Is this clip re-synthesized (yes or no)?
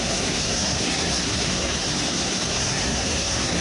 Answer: yes